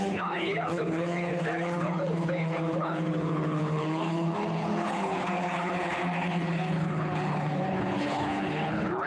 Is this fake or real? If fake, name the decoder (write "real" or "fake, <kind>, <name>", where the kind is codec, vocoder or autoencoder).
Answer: fake, codec, HILCodec